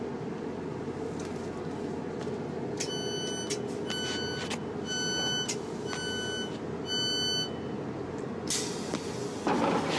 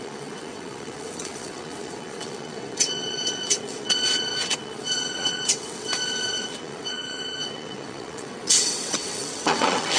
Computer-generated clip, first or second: second